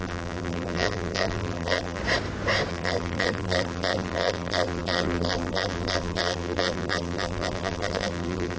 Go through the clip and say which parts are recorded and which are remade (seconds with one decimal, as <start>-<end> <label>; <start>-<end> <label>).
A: 0.0-2.0 remade; 2.0-2.7 recorded; 2.7-8.6 remade